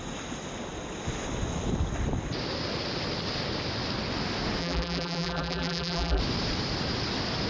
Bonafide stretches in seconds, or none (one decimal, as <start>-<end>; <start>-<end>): 0.0-4.6; 6.2-7.5